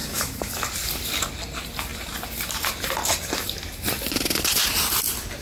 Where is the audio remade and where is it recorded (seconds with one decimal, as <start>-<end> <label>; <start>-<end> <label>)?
0.0-0.5 remade; 0.5-5.4 recorded